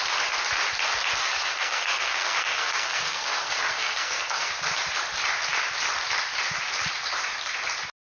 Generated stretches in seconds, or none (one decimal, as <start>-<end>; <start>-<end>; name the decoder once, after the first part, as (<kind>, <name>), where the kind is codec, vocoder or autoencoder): 1.2-4.5 (codec, SNAC)